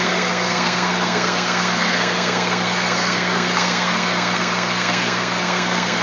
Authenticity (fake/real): fake